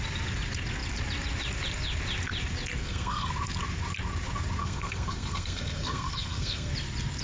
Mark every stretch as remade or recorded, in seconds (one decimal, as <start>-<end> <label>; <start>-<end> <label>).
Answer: 0.0-2.8 recorded; 2.8-3.3 remade; 3.3-4.6 recorded; 4.6-6.7 remade; 6.7-7.2 recorded